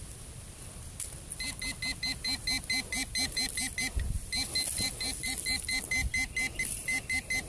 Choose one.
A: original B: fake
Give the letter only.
A